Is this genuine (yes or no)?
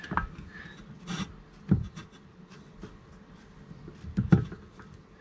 yes